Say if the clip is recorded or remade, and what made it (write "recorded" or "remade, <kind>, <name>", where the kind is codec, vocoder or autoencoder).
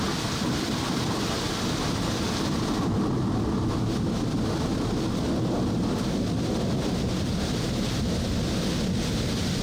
recorded